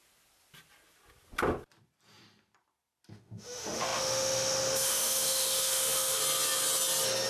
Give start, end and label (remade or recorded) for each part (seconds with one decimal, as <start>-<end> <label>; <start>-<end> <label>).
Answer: 0.0-3.1 recorded; 3.1-6.2 remade; 6.2-7.3 recorded